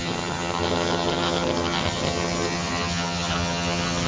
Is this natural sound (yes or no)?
no